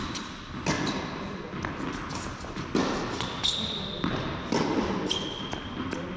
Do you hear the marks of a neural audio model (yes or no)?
no